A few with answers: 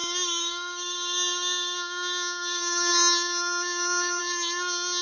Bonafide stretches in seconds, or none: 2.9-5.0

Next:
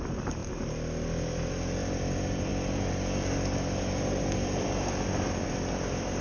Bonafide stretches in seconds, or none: 0.0-6.2